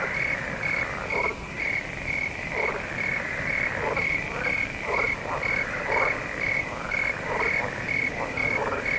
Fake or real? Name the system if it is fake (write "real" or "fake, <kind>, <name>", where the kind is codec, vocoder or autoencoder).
real